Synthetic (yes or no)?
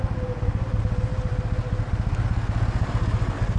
no